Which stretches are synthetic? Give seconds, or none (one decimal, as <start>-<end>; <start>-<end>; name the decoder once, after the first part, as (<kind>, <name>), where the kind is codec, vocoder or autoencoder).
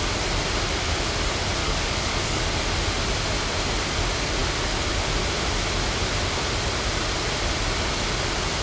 1.6-2.4 (codec, DAC)